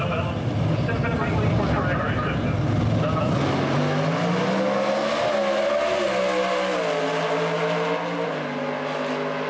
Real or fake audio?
real